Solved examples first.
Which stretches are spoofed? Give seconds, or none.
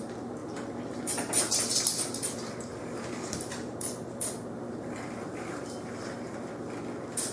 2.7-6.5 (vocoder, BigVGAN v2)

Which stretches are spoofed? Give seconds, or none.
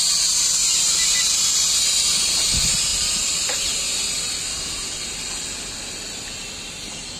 none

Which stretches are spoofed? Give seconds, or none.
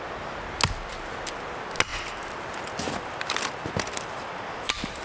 1.9-5.0 (vocoder, BigVGAN v2)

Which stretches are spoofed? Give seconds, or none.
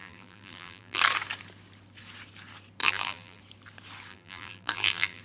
0.0-1.0 (vocoder, BigVGAN v2); 2.8-3.4; 4.1-5.2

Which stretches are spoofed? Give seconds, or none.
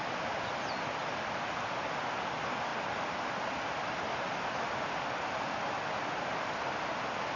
none